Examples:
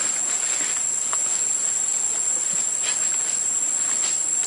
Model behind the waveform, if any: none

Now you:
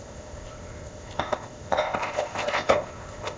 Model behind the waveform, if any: codec, ZipCodec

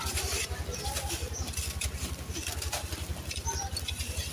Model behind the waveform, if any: none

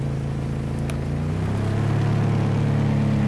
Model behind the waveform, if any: none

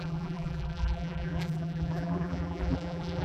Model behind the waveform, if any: vocoder, BigVGAN v2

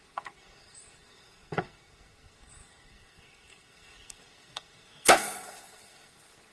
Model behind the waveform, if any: codec, SNAC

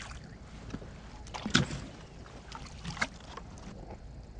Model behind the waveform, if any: none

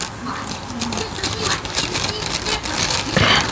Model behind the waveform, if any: vocoder, BigVGAN v2